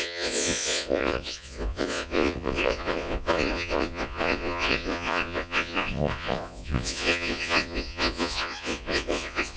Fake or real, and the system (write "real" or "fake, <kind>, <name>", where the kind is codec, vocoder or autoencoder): fake, vocoder, Vocos